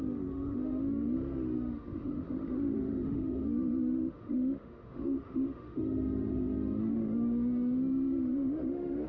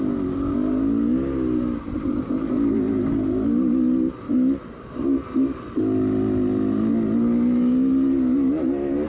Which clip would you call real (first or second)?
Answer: second